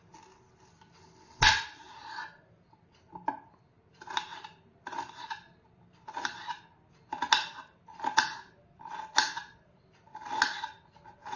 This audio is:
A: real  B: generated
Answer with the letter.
A